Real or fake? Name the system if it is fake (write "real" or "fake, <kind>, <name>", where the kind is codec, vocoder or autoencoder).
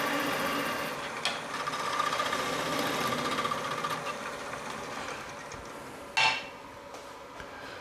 real